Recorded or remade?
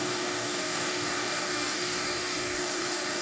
remade